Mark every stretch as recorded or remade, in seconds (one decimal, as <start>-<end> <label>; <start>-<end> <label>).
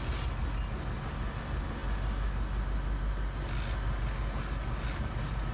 0.0-5.5 recorded